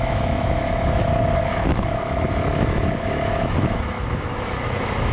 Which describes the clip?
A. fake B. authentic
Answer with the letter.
A